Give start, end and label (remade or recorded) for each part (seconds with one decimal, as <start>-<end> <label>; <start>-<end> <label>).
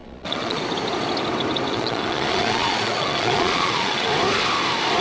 0.0-0.6 remade; 0.6-1.7 recorded; 1.7-4.1 remade; 4.1-5.0 recorded